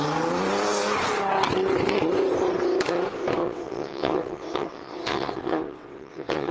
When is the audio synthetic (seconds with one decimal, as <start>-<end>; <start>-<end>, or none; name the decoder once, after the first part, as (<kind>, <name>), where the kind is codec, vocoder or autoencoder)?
3.4-6.5 (vocoder, WaveNeXt)